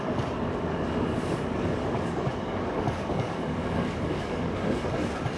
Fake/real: fake